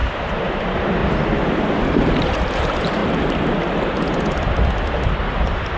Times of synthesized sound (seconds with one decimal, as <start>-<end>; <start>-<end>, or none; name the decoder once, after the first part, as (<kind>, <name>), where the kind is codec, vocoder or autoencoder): 0.0-1.0 (vocoder, BigVGAN v2); 1.8-3.0